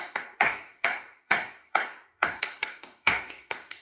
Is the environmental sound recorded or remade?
remade